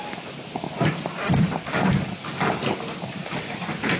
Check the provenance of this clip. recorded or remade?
recorded